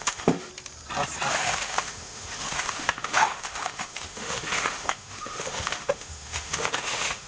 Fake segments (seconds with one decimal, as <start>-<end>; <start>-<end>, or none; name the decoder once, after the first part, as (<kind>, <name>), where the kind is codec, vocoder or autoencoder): 0.0-0.5 (autoencoder, DAC-VAE); 1.3-7.3